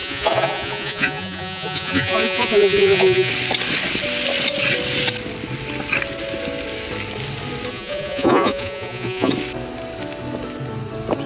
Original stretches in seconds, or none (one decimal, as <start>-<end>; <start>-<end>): 3.3-7.7; 9.3-11.3